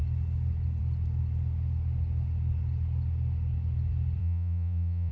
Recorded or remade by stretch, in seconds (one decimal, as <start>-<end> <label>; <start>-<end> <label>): 0.0-4.2 recorded; 4.2-5.1 remade